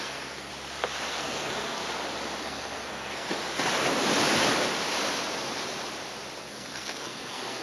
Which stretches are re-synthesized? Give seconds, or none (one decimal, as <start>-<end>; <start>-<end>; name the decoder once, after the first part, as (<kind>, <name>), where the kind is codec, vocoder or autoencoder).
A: 0.0-0.5 (codec, SNAC); 1.1-1.8; 2.4-3.3; 6.4-7.6